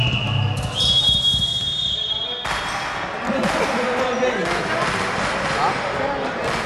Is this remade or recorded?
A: recorded